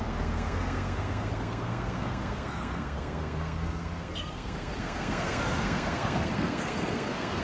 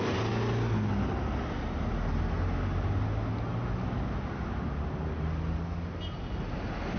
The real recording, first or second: second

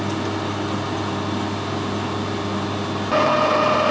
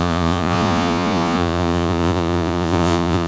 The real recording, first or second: first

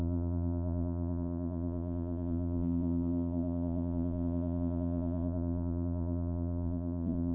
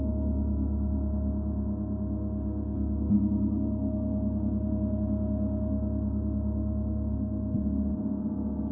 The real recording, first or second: second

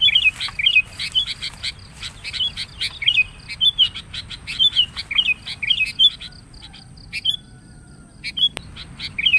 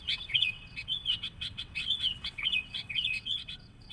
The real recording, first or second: first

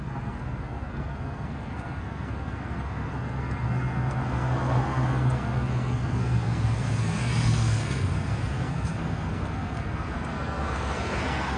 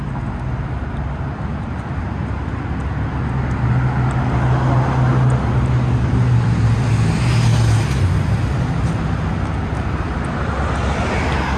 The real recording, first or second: second